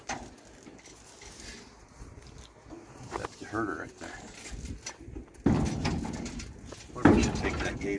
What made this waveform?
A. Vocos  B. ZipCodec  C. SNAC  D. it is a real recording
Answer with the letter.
D